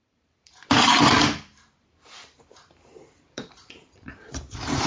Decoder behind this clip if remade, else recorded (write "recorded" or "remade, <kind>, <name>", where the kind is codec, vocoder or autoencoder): remade, vocoder, BigVGAN v2